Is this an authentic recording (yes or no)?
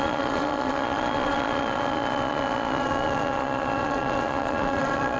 no